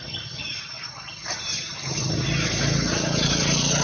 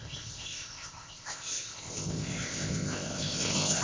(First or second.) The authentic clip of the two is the first